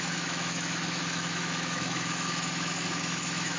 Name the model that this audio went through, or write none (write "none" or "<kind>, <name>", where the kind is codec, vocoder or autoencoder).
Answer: autoencoder, DAC-VAE